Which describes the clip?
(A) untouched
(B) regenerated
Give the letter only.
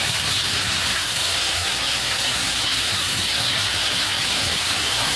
B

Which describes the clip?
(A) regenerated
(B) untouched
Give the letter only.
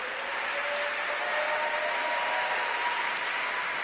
B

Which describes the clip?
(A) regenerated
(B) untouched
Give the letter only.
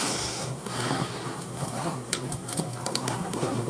A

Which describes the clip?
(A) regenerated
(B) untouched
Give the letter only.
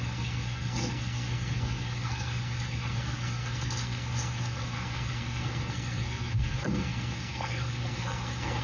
A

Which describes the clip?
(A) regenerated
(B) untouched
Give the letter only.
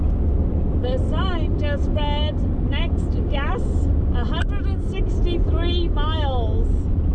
B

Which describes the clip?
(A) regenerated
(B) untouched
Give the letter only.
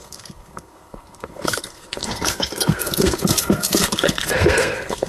A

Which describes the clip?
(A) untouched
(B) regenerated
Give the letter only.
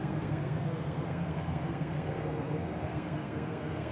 B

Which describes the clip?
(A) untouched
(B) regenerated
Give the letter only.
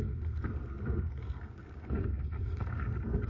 B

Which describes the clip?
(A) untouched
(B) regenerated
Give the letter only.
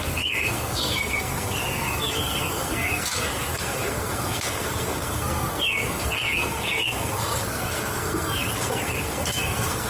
B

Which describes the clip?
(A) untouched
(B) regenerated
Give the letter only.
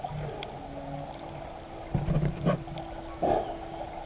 A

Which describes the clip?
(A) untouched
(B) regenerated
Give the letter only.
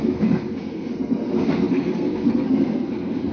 B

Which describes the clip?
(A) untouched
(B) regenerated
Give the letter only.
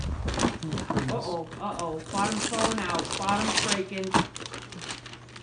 A